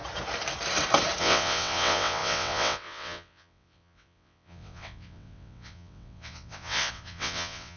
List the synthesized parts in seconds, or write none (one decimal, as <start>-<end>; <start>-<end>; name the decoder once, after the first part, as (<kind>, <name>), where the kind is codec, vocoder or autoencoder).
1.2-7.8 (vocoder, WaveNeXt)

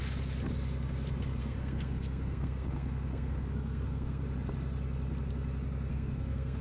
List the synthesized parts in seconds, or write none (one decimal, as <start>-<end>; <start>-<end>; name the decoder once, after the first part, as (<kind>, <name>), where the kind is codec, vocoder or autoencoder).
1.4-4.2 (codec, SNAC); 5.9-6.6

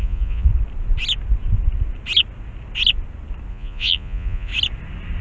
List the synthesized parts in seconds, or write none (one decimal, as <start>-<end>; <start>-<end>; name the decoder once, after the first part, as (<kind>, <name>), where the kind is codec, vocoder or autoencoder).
0.0-0.5 (vocoder, Vocos); 3.5-4.5

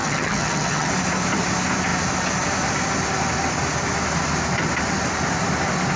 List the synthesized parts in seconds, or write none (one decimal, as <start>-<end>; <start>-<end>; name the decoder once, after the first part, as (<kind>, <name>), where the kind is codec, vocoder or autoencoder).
0.0-0.9 (vocoder, HiFi-GAN)

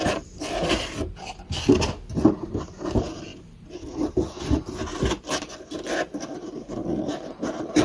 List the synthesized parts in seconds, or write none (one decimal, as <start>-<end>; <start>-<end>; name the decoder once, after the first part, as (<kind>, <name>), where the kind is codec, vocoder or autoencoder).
none